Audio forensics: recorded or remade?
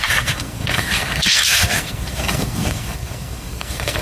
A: remade